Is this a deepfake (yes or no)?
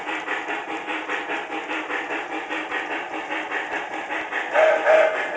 no